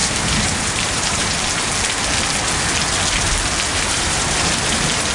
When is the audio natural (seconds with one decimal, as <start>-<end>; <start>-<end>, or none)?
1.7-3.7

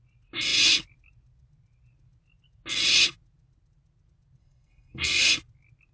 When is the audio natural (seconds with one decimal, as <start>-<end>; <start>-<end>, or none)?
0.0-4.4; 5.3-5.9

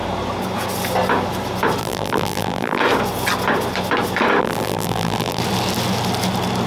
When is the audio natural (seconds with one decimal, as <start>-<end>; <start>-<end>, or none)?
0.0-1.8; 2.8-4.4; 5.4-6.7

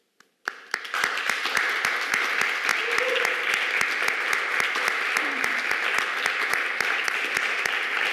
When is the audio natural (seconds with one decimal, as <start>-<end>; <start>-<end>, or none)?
0.0-8.1

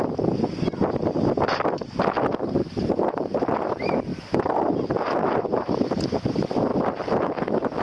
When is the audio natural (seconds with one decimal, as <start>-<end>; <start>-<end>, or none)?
0.0-2.6; 3.4-4.1; 6.0-7.8